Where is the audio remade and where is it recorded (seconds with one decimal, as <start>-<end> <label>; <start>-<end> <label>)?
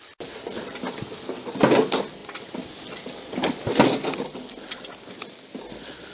0.0-6.1 recorded